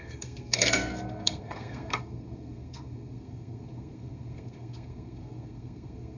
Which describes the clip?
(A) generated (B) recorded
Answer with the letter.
A